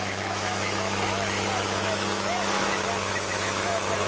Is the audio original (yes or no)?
no